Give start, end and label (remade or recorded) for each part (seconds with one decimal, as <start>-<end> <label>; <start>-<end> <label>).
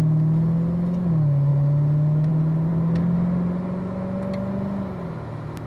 0.0-5.7 recorded